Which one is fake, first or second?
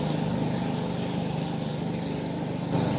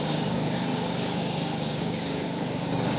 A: second